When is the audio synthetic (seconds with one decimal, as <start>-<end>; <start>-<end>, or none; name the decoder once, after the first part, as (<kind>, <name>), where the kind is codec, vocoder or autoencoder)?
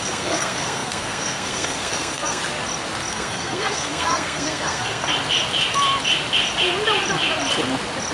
0.0-2.4 (codec, SNAC); 3.1-5.0